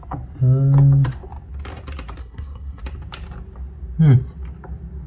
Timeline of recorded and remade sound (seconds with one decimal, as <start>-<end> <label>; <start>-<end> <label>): 0.0-2.2 recorded; 2.2-2.8 remade; 2.8-5.1 recorded